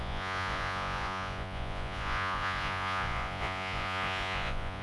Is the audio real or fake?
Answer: fake